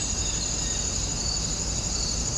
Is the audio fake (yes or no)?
yes